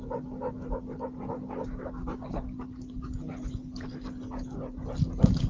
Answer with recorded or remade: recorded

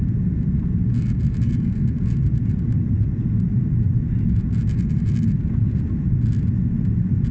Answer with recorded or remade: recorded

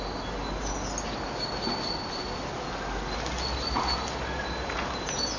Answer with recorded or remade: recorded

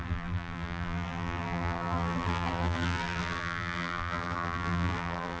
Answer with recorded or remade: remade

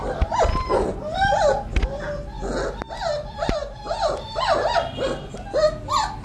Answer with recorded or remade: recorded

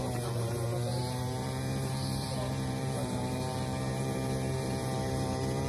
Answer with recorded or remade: remade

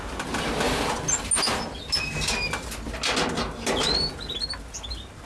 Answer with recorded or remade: recorded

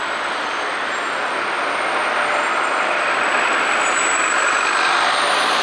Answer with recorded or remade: recorded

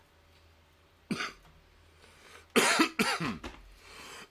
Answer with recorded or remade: recorded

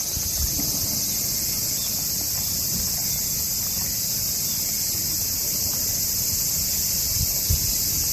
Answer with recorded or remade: recorded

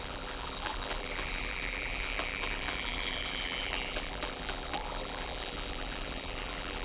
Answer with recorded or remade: remade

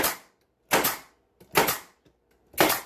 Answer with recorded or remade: recorded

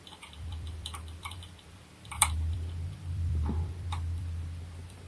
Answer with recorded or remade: remade